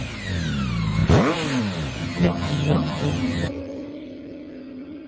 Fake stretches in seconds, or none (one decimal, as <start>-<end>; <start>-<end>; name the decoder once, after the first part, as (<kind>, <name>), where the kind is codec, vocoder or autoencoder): 2.0-5.1 (vocoder, HiFi-GAN)